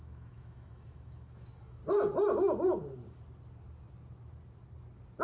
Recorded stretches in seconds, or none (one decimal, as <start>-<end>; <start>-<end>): 1.8-5.2